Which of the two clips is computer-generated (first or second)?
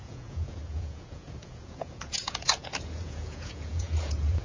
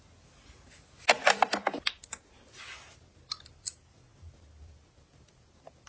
first